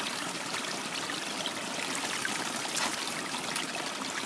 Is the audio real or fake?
real